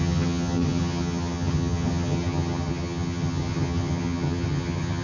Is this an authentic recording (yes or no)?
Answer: no